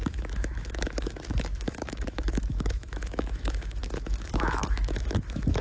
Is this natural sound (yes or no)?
no